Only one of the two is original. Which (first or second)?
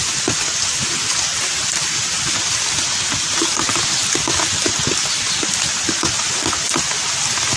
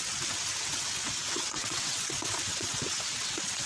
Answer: first